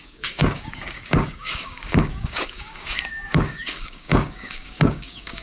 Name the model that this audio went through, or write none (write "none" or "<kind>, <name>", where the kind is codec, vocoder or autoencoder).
codec, DAC